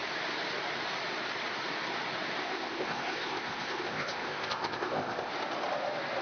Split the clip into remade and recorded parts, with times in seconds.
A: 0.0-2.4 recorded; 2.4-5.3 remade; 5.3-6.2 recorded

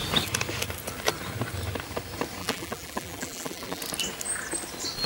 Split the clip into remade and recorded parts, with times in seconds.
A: 0.0-2.4 recorded; 2.4-3.8 remade; 3.8-5.1 recorded

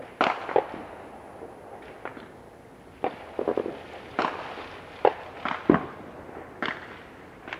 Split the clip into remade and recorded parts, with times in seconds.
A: 0.0-7.6 recorded

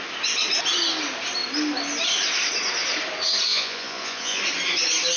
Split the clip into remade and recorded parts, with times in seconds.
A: 0.0-3.5 recorded; 3.5-4.4 remade; 4.4-5.2 recorded

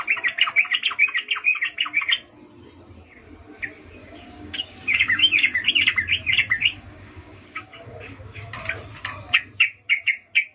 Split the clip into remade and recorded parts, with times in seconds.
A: 0.0-1.5 recorded; 1.5-2.0 remade; 2.0-4.0 recorded; 4.0-5.7 remade; 5.7-6.6 recorded; 6.6-8.6 remade; 8.6-10.5 recorded

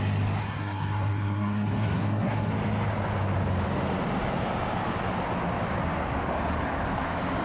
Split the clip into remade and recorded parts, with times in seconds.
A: 0.0-0.4 recorded; 0.4-2.5 remade; 2.5-7.4 recorded

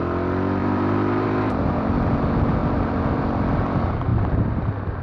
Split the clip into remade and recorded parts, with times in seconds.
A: 0.0-0.6 recorded; 0.6-1.9 remade; 1.9-2.6 recorded; 2.6-3.3 remade; 3.3-4.1 recorded; 4.1-4.6 remade; 4.6-5.0 recorded